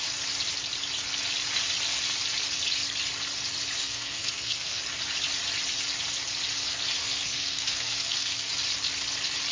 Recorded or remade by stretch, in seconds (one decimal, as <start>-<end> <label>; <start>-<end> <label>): 0.0-3.8 recorded; 3.8-4.8 remade; 4.8-7.0 recorded; 7.0-8.5 remade; 8.5-9.5 recorded